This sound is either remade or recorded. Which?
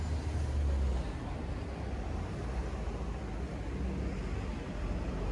recorded